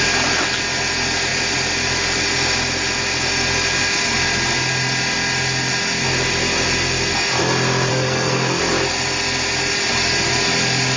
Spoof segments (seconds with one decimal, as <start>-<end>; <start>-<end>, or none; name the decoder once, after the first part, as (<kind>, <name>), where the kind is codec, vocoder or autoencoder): 7.9-8.6 (codec, SNAC)